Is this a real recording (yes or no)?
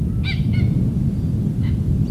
yes